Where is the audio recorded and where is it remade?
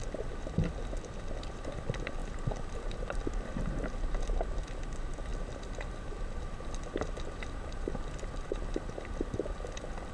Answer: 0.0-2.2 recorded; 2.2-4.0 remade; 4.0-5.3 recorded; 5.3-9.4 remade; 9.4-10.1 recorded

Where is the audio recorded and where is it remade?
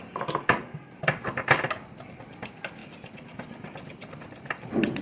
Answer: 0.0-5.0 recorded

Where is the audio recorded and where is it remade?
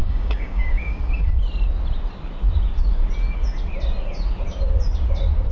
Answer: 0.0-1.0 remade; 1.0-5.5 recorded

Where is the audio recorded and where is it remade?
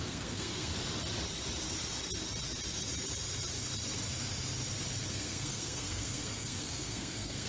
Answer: 0.0-0.7 remade; 0.7-5.1 recorded; 5.1-7.5 remade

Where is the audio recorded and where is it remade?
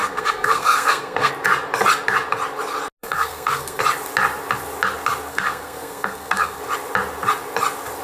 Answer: 0.0-1.3 remade; 1.3-3.0 recorded; 3.0-3.8 remade; 3.8-5.3 recorded; 5.3-6.6 remade; 6.6-8.0 recorded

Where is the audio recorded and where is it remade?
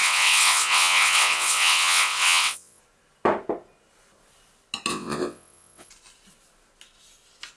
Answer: 0.0-2.8 remade; 2.8-4.9 recorded; 4.9-5.9 remade; 5.9-7.6 recorded